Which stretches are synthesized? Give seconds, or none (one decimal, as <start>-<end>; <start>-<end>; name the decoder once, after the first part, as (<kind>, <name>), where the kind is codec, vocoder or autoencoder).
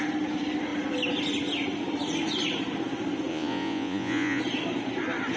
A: 3.3-4.4 (vocoder, Vocos)